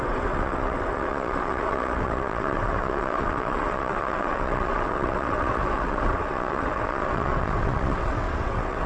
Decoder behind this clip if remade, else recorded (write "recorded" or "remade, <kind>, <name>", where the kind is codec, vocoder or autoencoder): remade, vocoder, WaveNeXt